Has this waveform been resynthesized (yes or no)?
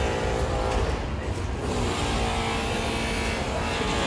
no